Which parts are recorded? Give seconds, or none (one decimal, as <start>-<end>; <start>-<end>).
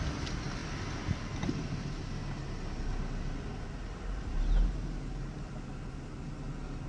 0.0-6.9